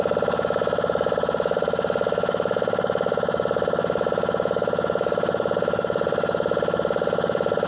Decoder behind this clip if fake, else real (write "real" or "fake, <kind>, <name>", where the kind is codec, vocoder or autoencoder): fake, autoencoder, DAC-VAE